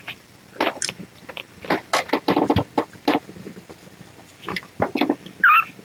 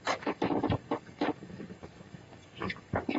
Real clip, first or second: first